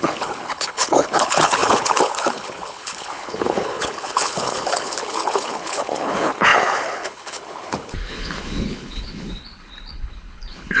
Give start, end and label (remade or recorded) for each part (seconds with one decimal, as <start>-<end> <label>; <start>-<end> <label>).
0.0-10.8 remade